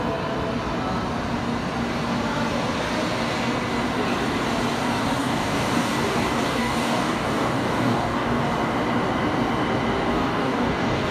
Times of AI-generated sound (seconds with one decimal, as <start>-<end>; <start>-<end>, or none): 5.2-8.5; 10.1-11.1